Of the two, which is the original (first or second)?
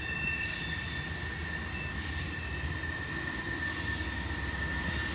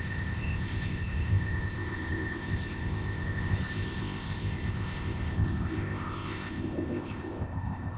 first